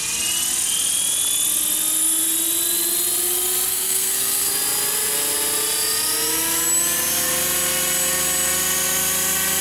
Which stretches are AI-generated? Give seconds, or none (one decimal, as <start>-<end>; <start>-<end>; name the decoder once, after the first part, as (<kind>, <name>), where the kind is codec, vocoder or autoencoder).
3.7-4.5 (codec, SNAC)